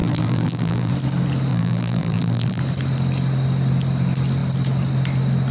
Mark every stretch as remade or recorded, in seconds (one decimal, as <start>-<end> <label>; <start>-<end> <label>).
0.0-0.9 remade; 0.9-1.5 recorded; 1.5-2.6 remade; 2.6-5.5 recorded